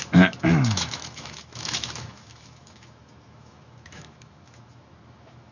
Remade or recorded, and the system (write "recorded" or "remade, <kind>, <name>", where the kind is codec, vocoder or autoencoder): remade, autoencoder, DAC-VAE